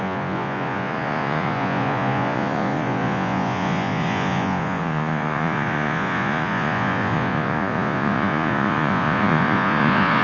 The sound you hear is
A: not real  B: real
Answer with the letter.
A